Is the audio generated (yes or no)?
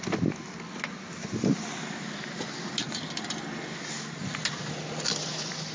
no